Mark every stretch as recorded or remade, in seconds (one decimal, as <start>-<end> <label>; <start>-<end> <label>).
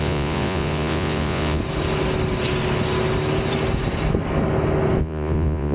0.0-1.6 remade; 1.6-5.0 recorded; 5.0-5.7 remade